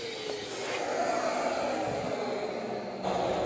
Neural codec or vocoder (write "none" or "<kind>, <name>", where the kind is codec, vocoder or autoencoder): none